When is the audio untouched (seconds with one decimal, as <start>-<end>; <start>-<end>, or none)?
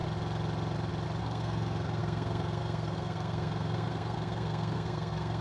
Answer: 0.0-1.2